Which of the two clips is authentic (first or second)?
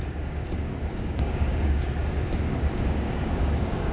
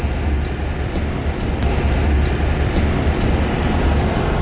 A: second